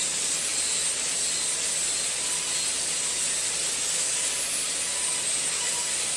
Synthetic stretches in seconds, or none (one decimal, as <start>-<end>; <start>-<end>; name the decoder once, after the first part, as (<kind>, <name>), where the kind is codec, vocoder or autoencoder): none